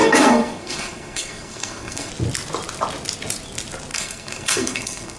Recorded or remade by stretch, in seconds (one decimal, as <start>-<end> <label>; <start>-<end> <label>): 0.0-2.1 remade; 2.1-3.9 recorded; 3.9-5.2 remade